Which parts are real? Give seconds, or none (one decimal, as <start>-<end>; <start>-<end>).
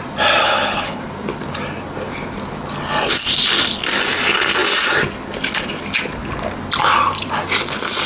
0.0-0.4; 1.0-8.1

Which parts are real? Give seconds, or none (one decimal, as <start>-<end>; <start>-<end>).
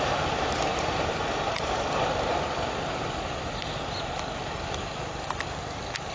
0.0-0.7; 3.7-6.1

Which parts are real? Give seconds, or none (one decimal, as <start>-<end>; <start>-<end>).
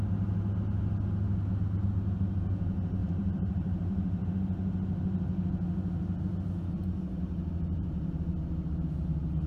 0.0-3.0; 4.3-9.5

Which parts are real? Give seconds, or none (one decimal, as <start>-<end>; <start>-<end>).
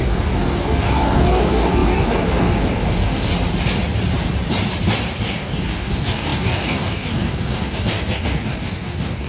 3.3-5.2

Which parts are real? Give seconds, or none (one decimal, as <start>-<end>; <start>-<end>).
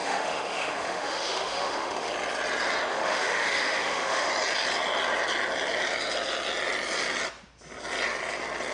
2.1-2.9; 4.3-8.7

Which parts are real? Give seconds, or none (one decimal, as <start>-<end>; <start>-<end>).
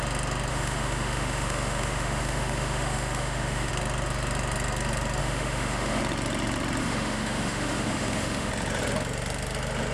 0.0-0.5; 3.7-5.2; 6.0-6.8; 8.5-9.9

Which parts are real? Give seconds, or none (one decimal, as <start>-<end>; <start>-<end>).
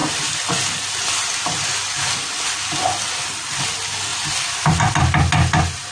0.0-5.9